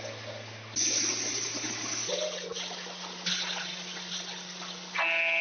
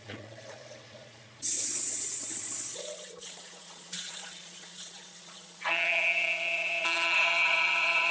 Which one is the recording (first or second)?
first